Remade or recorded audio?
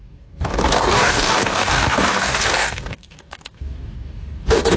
remade